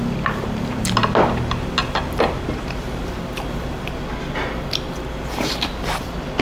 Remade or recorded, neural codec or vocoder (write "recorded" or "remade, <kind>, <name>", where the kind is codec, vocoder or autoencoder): recorded